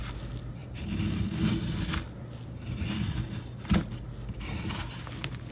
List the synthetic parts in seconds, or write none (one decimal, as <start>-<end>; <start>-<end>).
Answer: none